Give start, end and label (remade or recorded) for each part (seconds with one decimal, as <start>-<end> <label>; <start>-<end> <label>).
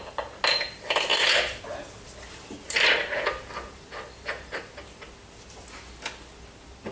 0.0-6.9 recorded